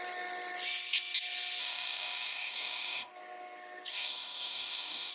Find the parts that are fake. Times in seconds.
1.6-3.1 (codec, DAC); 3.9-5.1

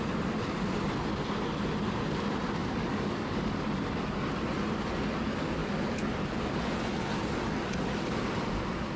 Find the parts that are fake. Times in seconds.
2.6-3.6 (codec, DAC)

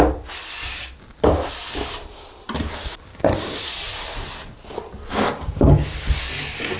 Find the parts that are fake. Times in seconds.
3.1-3.7 (codec, DAC); 5.1-6.2

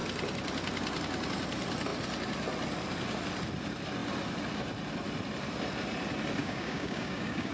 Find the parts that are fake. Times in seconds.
6.4-7.5 (codec, DAC)

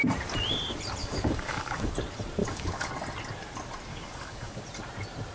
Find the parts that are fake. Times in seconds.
1.0-1.9 (codec, DAC); 2.4-2.9; 3.9-4.6

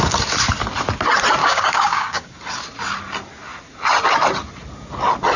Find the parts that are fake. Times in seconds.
1.4-2.3 (codec, DAC)

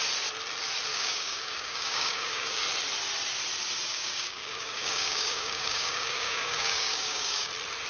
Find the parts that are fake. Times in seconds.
0.9-2.6 (codec, DAC); 3.9-7.5

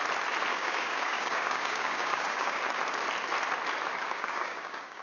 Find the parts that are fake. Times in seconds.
0.5-2.6 (codec, DAC); 4.0-5.0